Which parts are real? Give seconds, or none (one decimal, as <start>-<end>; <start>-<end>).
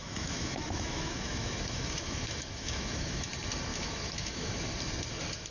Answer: 3.3-3.7; 4.6-5.5